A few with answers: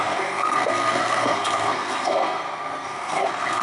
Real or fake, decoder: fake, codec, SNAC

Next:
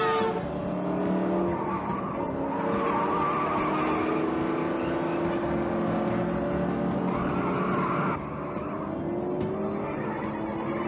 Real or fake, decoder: real